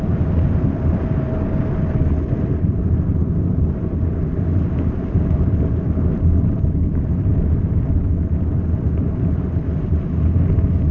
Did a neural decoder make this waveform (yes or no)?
no